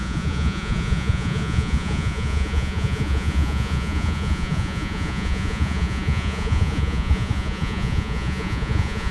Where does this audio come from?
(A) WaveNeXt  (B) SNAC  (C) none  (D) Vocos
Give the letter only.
D